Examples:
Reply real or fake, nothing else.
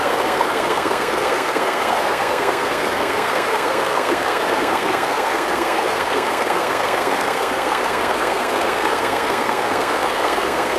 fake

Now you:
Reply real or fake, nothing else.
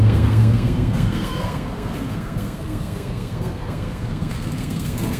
fake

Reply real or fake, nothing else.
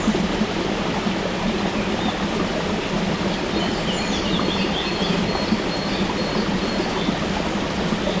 real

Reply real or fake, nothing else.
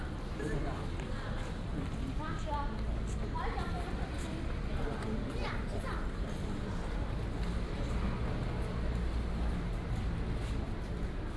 real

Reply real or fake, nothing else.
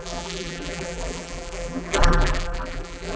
fake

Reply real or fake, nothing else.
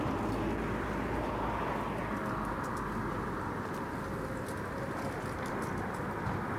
real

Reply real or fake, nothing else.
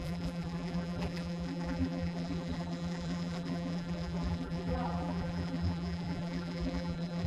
fake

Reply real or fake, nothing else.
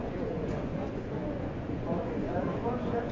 fake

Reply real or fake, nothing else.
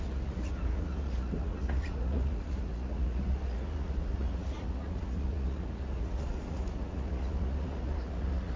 fake